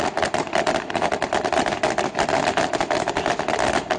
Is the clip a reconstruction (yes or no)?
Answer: yes